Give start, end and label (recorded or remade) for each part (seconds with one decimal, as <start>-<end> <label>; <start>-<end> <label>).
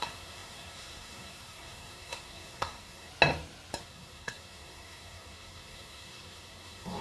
0.0-3.1 remade; 3.1-3.8 recorded; 3.8-7.0 remade